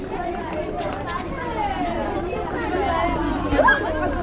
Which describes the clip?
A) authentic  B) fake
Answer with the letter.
A